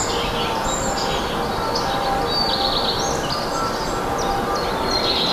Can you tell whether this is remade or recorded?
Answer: recorded